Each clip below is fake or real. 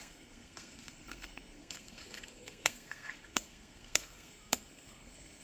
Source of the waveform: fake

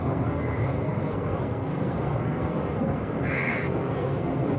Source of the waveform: fake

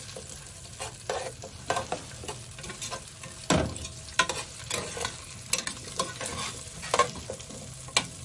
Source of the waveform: real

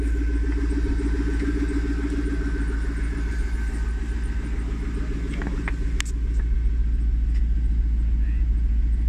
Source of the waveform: real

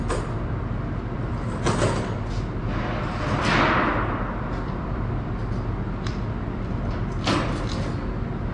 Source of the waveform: real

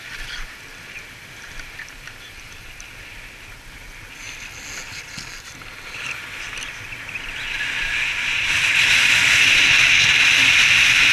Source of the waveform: real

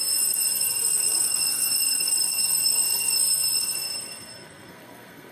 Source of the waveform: fake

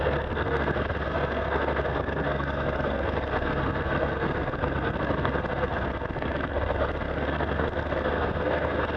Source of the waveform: fake